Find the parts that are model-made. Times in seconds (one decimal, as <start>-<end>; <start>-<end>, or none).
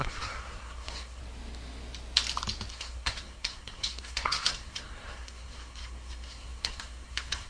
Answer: 0.0-1.2; 2.7-7.5